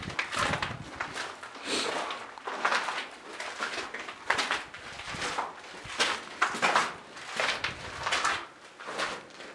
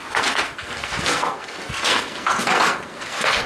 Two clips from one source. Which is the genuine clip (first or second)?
first